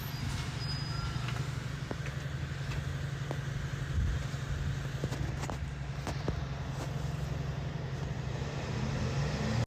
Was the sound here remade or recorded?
recorded